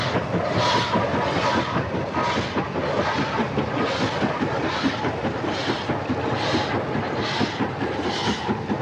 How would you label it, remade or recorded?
recorded